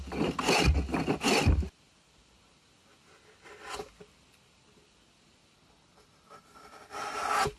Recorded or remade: recorded